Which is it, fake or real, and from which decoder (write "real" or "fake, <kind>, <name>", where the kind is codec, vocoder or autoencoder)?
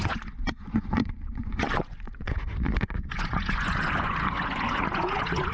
fake, vocoder, Vocos